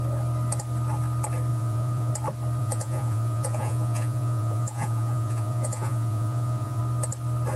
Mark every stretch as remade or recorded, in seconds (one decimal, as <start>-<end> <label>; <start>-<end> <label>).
0.0-1.5 recorded; 1.5-2.1 remade; 2.1-2.6 recorded; 2.6-6.8 remade; 6.8-7.6 recorded